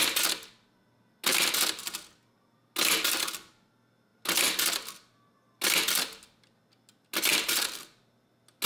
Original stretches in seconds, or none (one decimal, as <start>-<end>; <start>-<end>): 0.0-8.7